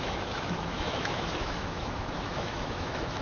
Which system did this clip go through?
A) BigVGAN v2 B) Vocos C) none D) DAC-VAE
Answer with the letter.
D